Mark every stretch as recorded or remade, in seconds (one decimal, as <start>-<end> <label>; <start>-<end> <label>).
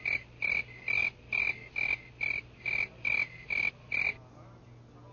0.0-5.1 recorded